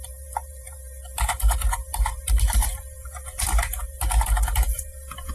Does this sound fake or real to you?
fake